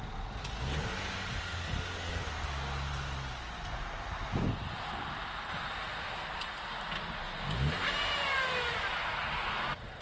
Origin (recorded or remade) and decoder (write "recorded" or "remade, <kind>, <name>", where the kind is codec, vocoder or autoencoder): recorded